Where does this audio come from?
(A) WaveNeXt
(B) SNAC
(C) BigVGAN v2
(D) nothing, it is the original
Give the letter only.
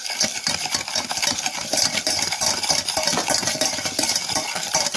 C